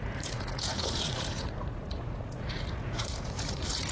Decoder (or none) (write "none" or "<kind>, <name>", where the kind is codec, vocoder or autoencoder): vocoder, Vocos